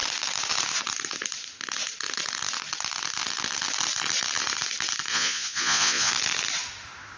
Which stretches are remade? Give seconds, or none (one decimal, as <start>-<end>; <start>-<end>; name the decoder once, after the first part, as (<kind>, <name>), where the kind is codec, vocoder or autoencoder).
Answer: 5.1-6.1 (vocoder, Vocos)